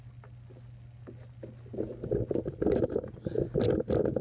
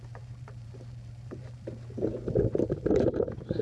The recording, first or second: first